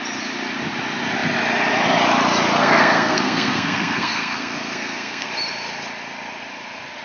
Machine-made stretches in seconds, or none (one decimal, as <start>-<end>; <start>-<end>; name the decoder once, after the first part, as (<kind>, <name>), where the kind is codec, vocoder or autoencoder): 2.6-5.3 (codec, SNAC)